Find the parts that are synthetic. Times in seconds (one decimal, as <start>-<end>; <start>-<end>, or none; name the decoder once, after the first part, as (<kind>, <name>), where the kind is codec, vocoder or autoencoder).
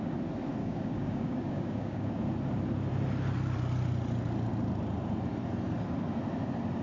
0.6-2.2 (codec, DAC)